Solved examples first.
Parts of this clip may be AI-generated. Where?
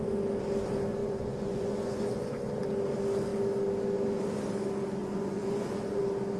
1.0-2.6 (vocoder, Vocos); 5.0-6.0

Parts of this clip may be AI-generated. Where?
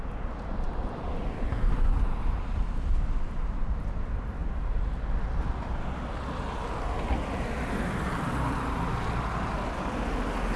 none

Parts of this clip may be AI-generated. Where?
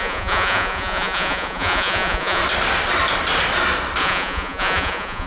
0.0-2.4 (vocoder, Vocos); 4.0-5.3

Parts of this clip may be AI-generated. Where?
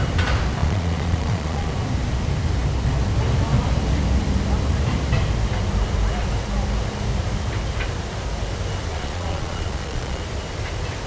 0.6-1.7 (vocoder, Vocos); 8.9-10.2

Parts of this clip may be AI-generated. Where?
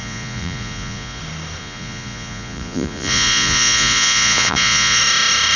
0.0-1.2 (vocoder, Vocos); 1.6-5.0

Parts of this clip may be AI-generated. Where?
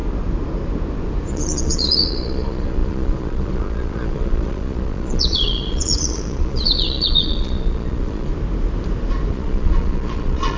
1.3-8.3 (vocoder, Vocos); 9.3-10.6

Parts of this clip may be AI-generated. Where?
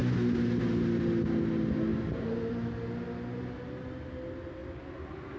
none